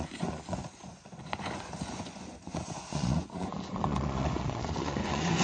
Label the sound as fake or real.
fake